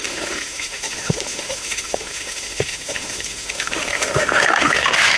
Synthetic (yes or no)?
yes